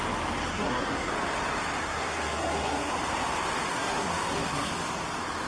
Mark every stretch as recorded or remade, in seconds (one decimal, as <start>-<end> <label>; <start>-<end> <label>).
0.0-0.5 recorded; 0.5-1.1 remade; 1.1-1.8 recorded; 1.8-2.9 remade; 2.9-3.7 recorded; 3.7-4.7 remade; 4.7-5.5 recorded